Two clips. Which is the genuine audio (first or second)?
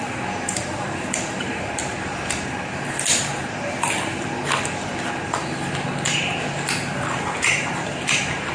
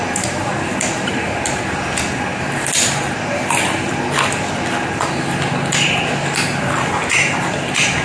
second